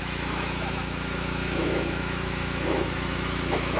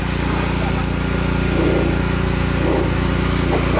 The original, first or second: second